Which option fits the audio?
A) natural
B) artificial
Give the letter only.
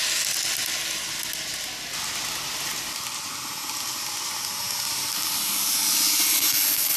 A